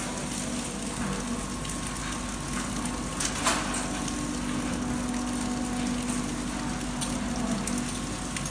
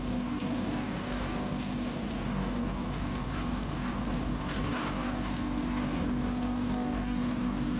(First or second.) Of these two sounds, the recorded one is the first